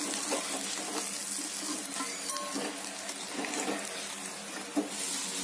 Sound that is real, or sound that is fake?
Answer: real